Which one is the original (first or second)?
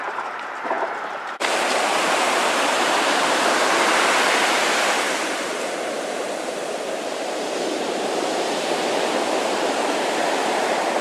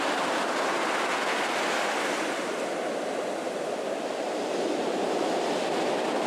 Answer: second